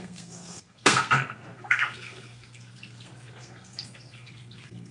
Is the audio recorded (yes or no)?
no